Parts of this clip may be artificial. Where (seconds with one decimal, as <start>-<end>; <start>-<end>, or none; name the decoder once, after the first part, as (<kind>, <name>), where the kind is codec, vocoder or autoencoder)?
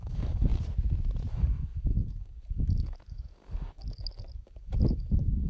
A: 0.0-0.5 (codec, DAC); 1.3-5.5